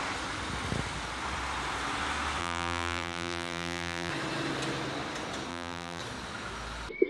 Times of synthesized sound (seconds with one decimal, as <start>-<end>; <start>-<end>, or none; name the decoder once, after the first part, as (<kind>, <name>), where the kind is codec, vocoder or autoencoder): 2.4-4.1 (vocoder, BigVGAN v2); 5.5-6.0